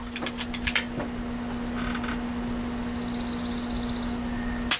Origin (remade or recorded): recorded